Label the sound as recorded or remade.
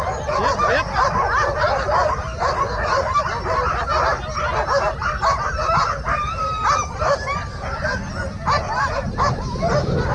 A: recorded